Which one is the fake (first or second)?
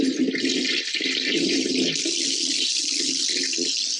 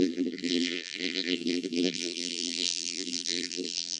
second